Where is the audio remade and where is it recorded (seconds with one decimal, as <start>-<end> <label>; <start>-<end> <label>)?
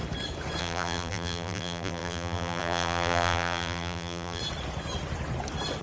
0.0-0.6 recorded; 0.6-4.4 remade; 4.4-5.8 recorded